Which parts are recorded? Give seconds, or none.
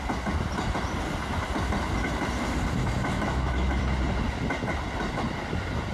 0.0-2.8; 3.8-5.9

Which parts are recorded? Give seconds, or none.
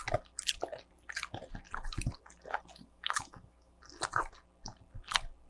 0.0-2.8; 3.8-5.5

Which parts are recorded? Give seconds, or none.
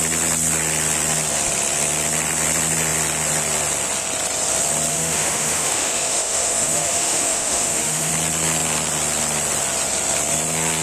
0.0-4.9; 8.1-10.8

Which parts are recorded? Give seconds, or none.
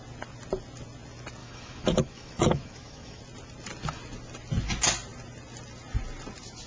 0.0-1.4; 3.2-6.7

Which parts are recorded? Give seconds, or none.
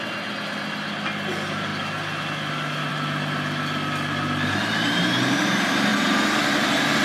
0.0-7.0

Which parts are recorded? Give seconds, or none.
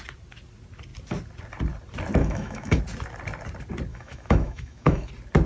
0.0-2.2; 2.8-3.9; 5.1-5.5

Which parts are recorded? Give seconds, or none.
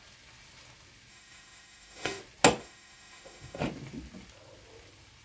0.0-1.1; 2.2-2.6; 3.6-5.2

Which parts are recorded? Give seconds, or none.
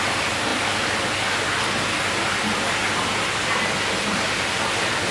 0.0-5.1